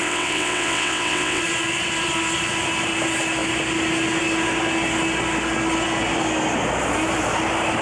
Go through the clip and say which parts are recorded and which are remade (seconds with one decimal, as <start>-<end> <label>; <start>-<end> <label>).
0.0-1.4 remade; 1.4-7.8 recorded